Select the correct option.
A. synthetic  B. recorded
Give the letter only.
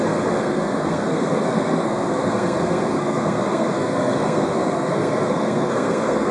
A